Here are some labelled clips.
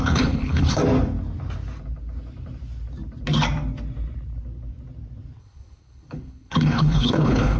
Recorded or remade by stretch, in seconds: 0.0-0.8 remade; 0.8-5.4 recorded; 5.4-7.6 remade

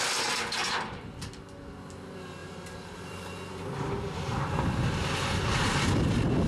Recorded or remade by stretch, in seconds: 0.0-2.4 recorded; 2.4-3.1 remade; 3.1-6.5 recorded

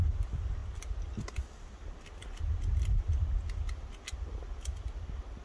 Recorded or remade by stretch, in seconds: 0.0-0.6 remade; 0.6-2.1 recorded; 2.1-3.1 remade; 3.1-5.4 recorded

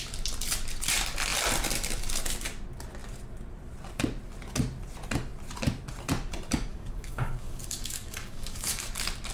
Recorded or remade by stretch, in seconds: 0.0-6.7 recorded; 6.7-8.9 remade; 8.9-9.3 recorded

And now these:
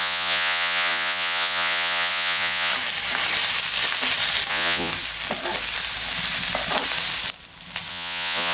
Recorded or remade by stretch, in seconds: 0.0-2.7 remade; 2.7-4.5 recorded; 4.5-4.9 remade; 4.9-7.9 recorded; 7.9-8.5 remade

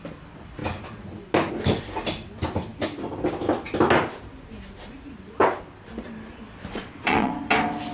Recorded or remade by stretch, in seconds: 0.0-6.7 recorded; 6.7-7.3 remade; 7.3-7.9 recorded

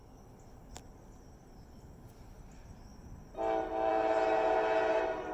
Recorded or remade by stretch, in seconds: 0.0-5.3 recorded